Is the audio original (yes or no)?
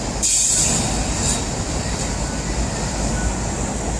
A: yes